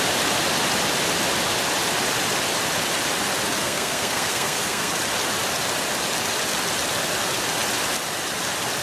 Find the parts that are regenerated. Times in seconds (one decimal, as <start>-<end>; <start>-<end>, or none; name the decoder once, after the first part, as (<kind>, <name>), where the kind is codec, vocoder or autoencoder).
3.6-4.9 (codec, SNAC)